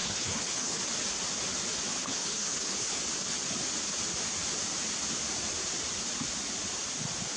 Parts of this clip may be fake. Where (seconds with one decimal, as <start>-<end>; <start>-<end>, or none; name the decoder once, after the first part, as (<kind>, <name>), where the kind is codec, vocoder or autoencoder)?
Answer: 0.0-0.8 (codec, HILCodec); 2.0-3.0